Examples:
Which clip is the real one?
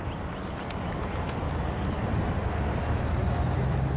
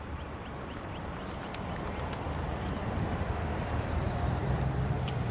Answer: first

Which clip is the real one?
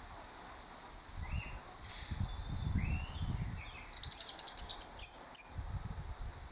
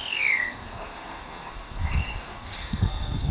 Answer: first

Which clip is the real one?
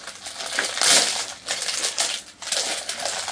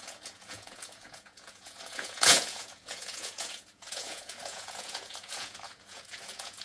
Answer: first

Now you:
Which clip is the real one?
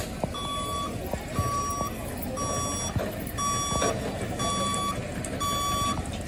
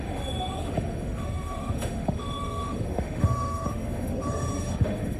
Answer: first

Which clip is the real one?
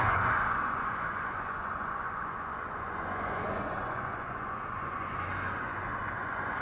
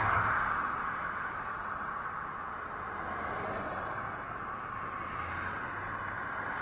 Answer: second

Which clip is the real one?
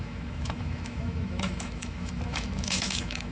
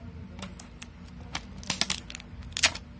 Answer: second